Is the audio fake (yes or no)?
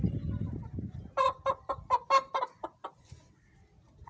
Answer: no